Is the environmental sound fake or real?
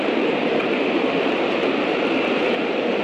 fake